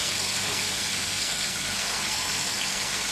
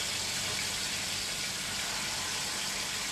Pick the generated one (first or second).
first